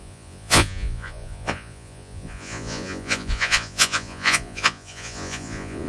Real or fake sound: fake